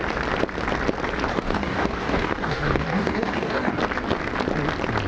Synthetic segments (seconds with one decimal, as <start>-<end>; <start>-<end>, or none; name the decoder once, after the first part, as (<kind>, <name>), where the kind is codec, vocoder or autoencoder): 1.3-3.8 (codec, DAC)